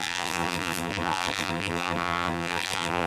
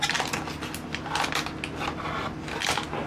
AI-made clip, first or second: first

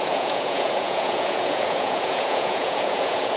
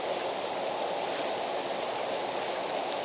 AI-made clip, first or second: first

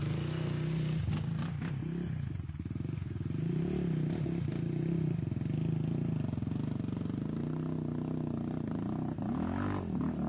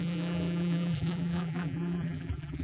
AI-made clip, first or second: second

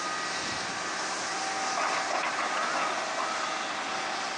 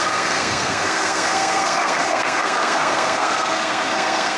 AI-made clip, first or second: second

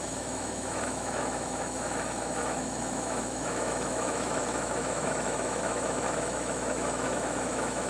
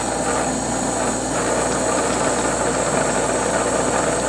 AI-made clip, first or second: first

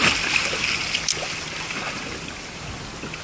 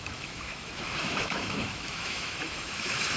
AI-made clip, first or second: second